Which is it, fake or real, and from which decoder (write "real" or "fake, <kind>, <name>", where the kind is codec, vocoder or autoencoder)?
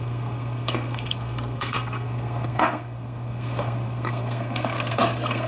fake, codec, SNAC